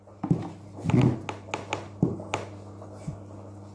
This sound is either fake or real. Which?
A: real